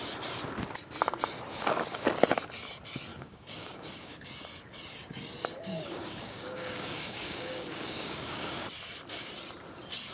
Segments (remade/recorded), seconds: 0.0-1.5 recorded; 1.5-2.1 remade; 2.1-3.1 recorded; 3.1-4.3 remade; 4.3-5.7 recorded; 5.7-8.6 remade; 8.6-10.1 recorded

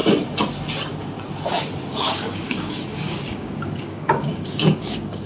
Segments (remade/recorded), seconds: 0.0-1.9 recorded; 1.9-5.3 remade